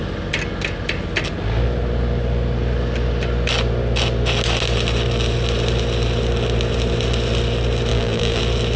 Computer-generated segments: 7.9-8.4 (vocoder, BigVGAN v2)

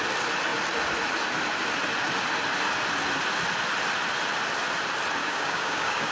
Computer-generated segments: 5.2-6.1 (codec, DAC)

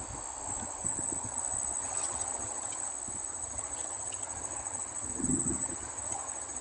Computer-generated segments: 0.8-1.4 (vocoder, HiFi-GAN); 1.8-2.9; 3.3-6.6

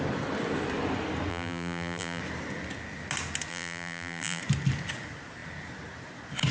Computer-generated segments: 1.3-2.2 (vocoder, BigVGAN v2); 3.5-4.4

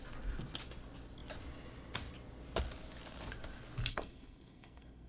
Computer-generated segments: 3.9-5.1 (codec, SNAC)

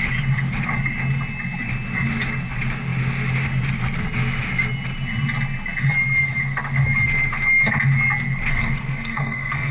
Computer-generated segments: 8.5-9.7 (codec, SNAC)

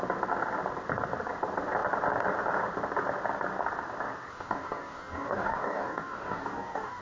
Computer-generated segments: 4.3-7.0 (codec, DAC)